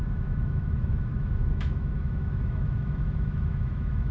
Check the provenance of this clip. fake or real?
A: fake